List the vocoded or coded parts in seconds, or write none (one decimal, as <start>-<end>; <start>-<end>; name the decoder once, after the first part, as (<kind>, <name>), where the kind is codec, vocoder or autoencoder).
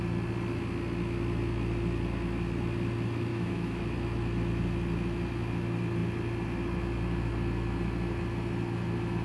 3.3-3.8 (autoencoder, DAC-VAE)